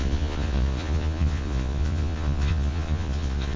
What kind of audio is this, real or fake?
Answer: fake